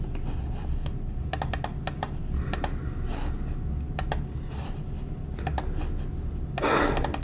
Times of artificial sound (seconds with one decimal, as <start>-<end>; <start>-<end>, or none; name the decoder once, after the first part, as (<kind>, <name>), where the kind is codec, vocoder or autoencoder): none